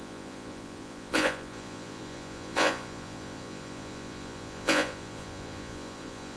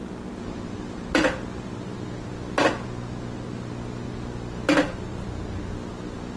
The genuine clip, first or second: second